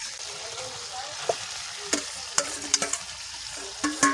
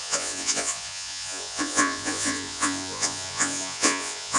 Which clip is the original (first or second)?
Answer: first